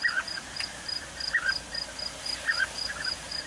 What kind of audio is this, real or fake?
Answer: real